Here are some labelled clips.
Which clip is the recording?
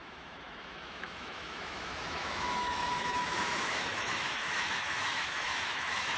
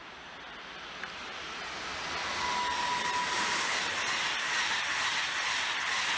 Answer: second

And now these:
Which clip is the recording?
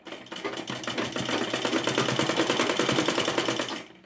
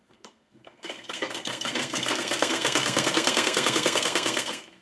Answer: first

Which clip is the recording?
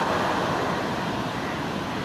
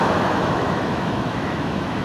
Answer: first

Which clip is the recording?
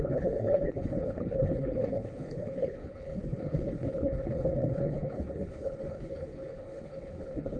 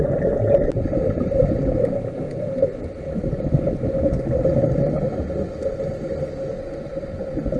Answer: second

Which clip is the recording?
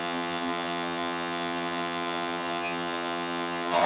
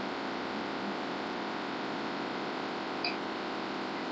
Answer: second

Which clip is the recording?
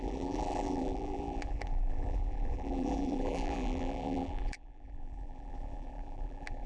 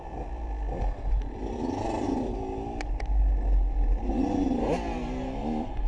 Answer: second